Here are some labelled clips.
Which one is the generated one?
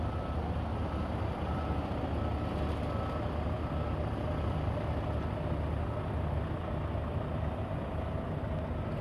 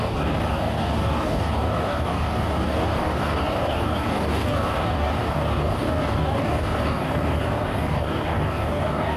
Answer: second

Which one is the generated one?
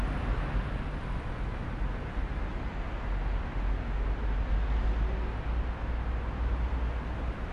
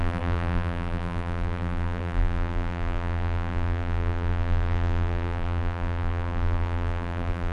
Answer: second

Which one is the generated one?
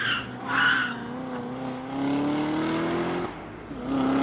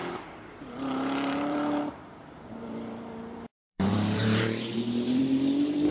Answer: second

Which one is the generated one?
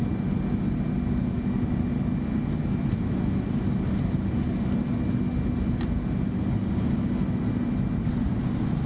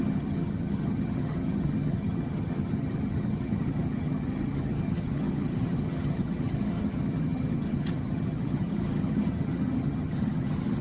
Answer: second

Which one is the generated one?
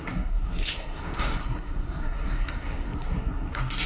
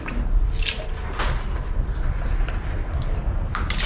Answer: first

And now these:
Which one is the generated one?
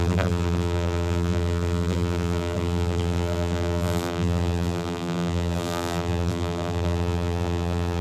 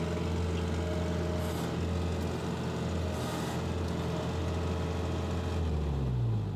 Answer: first